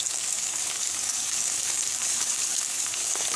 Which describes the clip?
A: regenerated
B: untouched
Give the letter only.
A